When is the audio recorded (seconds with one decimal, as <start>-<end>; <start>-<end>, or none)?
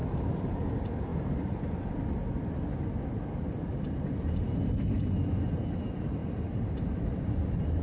0.7-1.1; 1.9-6.2; 7.1-7.8